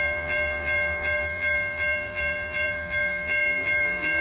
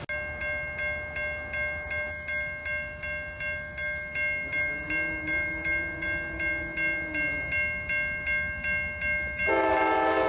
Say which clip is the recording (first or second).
second